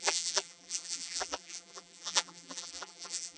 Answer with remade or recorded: remade